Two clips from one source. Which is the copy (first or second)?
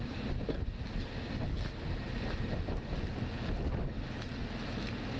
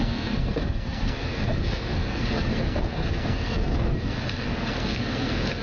second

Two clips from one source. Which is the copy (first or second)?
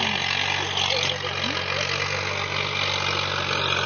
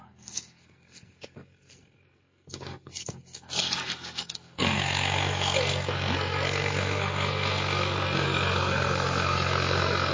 second